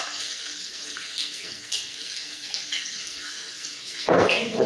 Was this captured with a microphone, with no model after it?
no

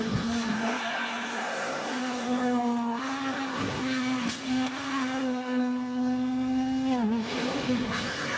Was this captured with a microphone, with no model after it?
no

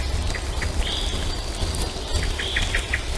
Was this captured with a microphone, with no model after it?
yes